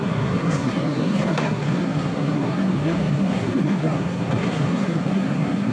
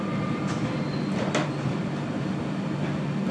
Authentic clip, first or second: second